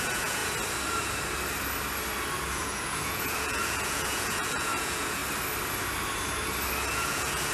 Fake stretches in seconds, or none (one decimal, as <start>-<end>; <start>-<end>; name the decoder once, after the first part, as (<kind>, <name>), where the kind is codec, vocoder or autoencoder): 0.0-0.4 (vocoder, Vocos); 2.5-5.2; 6.9-7.5